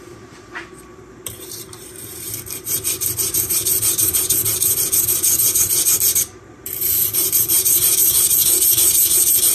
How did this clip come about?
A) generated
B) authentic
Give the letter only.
A